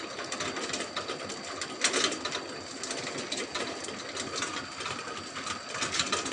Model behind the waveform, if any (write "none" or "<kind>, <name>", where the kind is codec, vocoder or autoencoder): none